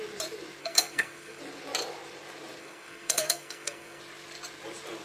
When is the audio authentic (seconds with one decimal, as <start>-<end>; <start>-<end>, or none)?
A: 0.0-0.6; 1.4-2.6; 4.0-5.0